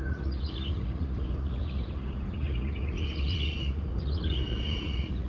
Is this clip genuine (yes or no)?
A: no